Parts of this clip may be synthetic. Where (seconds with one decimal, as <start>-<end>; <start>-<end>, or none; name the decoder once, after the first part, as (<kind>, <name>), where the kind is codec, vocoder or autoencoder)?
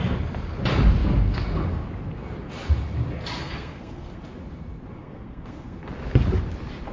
3.4-4.2 (codec, SNAC); 5.0-5.8